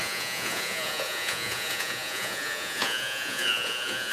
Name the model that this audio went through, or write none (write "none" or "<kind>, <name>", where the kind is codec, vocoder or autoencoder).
vocoder, Vocos